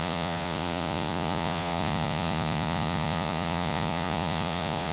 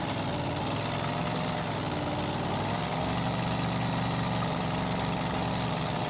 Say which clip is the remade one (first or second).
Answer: first